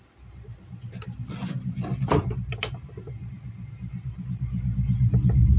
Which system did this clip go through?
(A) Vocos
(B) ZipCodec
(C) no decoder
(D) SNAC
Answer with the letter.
C